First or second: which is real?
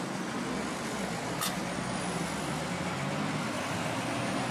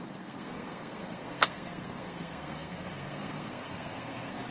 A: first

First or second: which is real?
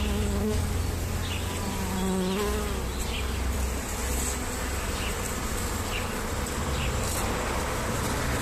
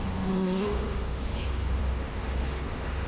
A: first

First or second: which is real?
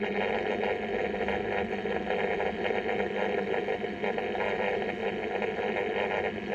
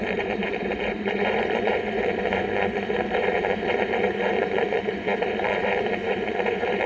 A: first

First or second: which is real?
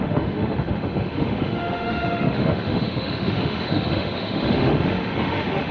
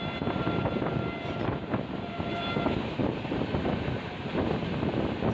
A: second